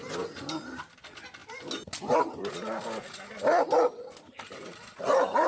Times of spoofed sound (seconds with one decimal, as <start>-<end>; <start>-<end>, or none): none